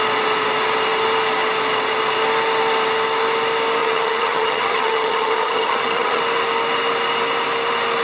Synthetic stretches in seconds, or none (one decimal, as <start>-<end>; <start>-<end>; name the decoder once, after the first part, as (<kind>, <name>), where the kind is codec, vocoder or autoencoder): 3.8-6.2 (vocoder, HiFi-GAN)